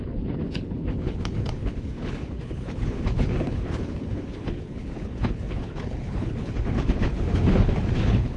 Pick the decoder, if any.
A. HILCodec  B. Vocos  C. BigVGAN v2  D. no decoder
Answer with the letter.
A